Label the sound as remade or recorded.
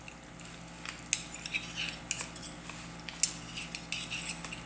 recorded